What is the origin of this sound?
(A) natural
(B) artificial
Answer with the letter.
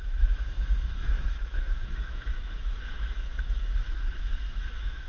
B